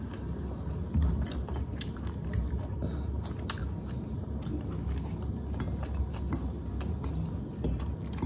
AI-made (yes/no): no